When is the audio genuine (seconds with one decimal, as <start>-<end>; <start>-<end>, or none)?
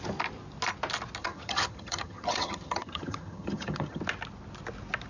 0.0-1.2; 4.0-5.1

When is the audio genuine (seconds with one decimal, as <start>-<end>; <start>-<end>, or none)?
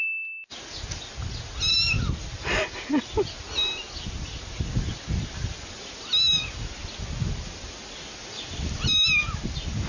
0.0-9.9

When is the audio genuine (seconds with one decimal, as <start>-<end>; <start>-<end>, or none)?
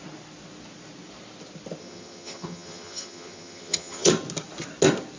0.0-1.8; 4.1-5.2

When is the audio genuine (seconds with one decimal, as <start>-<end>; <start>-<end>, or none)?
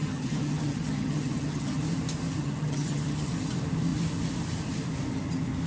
1.8-2.4; 3.3-5.7